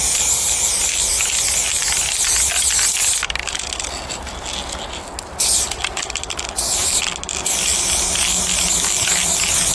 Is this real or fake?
real